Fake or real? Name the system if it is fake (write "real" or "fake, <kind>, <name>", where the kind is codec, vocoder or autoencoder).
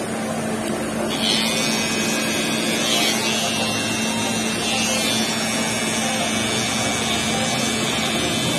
real